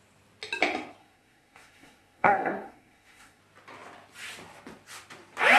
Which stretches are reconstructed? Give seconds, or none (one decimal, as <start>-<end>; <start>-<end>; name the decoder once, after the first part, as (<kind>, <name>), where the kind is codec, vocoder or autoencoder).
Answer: 1.0-3.4 (codec, SNAC)